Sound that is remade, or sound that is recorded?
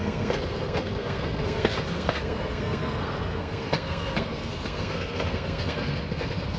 remade